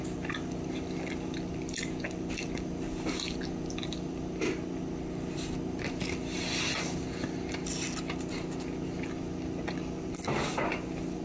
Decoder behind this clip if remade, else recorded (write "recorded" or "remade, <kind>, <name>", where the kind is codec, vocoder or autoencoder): recorded